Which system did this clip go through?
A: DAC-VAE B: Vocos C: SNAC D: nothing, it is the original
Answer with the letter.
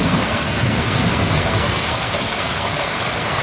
C